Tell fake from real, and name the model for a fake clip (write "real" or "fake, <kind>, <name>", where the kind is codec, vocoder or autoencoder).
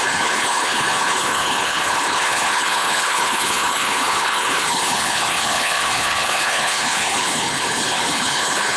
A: fake, codec, HILCodec